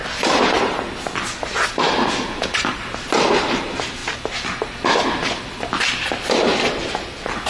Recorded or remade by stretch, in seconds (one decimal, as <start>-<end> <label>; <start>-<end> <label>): 0.0-0.8 remade; 0.8-7.5 recorded